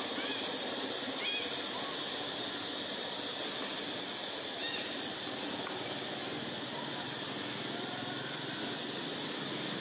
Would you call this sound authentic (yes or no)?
yes